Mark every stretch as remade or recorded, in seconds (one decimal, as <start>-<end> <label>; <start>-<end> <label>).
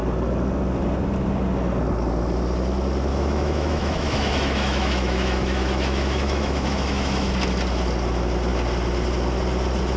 0.0-3.1 recorded; 3.1-7.3 remade; 7.3-10.0 recorded